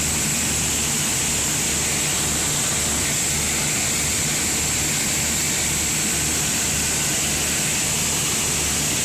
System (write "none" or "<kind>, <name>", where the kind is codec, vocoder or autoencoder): none